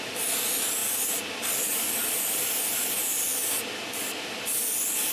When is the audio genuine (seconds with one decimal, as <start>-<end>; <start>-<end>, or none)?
0.0-5.1